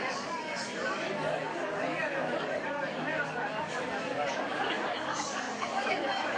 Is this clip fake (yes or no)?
yes